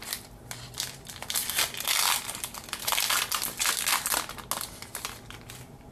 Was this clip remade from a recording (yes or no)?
no